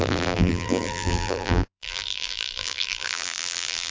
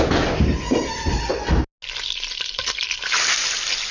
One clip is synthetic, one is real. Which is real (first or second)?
second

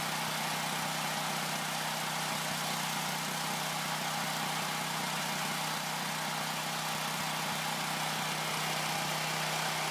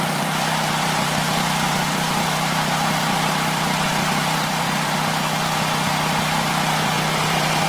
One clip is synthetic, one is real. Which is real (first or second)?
first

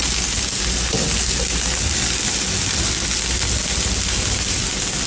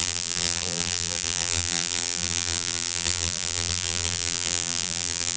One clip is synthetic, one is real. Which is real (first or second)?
first